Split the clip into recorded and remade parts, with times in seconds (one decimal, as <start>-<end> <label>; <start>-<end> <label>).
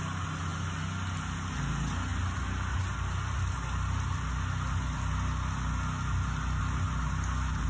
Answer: 0.0-7.7 recorded